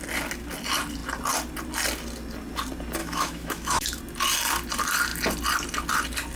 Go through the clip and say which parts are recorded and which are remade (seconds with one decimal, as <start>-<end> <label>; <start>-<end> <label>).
0.0-3.0 recorded; 3.0-4.0 remade; 4.0-6.4 recorded